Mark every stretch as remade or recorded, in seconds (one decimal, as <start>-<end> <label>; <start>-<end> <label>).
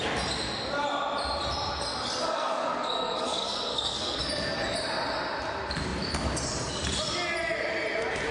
0.0-2.2 recorded; 2.2-4.2 remade; 4.2-8.3 recorded